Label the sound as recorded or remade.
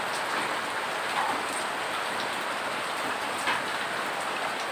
recorded